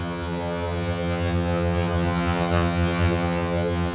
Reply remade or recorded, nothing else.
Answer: remade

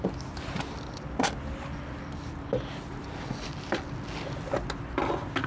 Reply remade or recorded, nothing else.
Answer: recorded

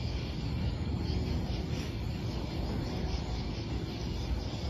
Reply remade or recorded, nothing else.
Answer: remade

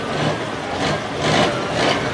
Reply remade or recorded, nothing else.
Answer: recorded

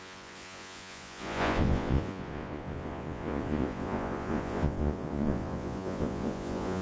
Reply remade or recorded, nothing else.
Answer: remade